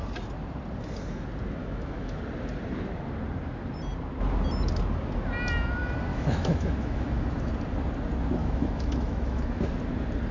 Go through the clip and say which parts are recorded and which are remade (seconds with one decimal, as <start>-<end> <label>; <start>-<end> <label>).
0.0-1.6 recorded; 1.6-2.2 remade; 2.2-6.1 recorded; 6.1-7.5 remade; 7.5-8.4 recorded; 8.4-9.6 remade; 9.6-10.3 recorded